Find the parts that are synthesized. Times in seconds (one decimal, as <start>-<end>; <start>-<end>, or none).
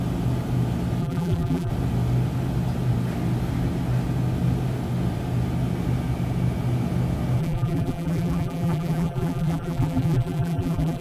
1.0-1.7; 7.4-11.0